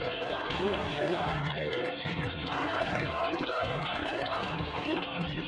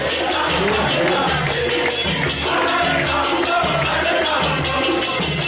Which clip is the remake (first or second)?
first